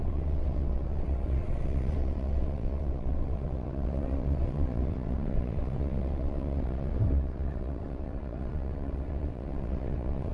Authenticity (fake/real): fake